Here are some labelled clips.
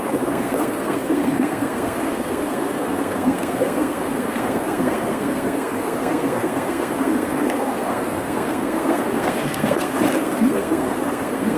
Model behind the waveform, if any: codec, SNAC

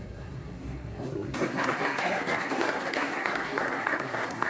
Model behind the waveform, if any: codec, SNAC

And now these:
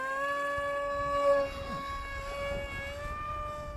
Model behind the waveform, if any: none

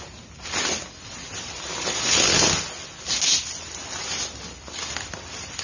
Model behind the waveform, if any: none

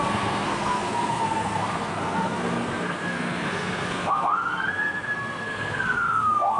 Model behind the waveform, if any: codec, SNAC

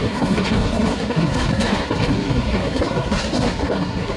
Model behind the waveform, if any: codec, SNAC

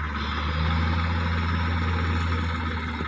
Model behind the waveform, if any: none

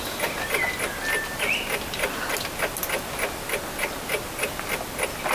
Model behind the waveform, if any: none